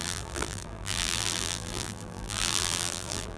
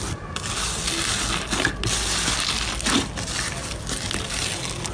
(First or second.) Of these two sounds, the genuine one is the second